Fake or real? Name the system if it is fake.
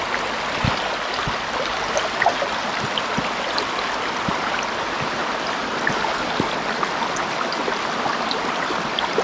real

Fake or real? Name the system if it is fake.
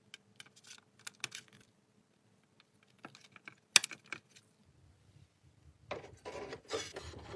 real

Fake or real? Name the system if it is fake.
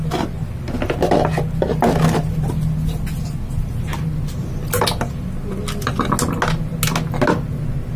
real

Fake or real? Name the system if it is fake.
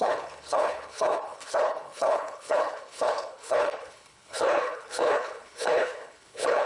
fake, codec, HILCodec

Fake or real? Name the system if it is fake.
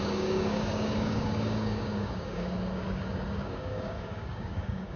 fake, codec, DAC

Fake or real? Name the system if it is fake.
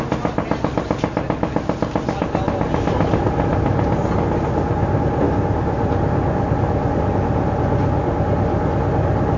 real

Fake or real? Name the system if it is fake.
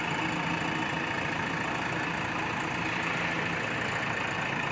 real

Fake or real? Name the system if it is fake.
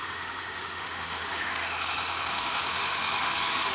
fake, autoencoder, DAC-VAE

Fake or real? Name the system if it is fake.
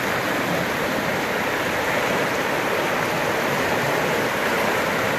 real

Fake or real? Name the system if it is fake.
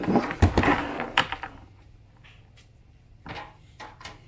real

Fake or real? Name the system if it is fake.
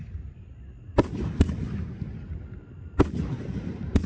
real